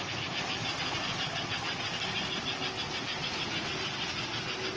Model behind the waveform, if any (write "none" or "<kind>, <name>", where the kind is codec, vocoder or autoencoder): none